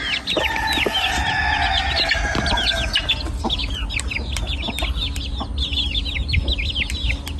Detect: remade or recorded recorded